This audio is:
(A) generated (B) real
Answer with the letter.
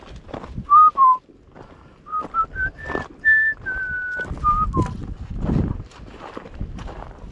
B